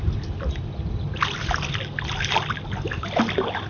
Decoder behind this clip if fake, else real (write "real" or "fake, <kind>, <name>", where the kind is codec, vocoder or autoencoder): real